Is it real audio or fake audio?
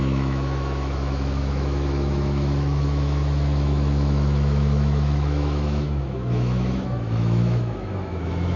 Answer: fake